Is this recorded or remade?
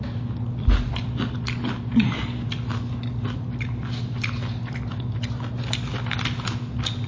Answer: recorded